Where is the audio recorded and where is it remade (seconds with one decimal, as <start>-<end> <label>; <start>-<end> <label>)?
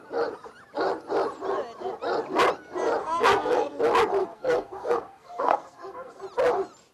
0.0-3.0 recorded; 3.0-3.8 remade; 3.8-4.2 recorded; 4.2-6.2 remade; 6.2-6.9 recorded